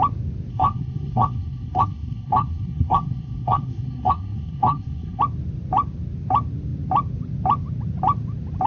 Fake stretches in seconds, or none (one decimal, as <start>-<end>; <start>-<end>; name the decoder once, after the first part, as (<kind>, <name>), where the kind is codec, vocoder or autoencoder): 0.5-5.2 (codec, SNAC)